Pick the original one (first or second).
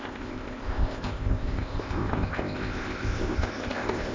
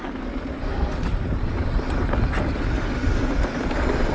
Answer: second